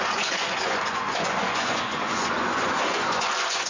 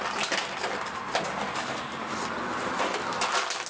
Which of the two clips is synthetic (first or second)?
first